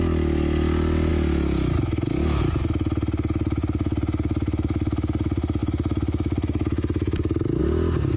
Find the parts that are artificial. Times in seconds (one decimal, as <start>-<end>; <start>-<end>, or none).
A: none